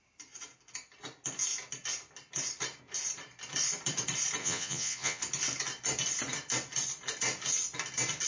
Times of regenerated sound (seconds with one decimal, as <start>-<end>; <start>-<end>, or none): 4.4-5.2